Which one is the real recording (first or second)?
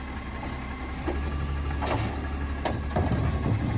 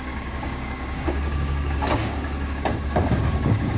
first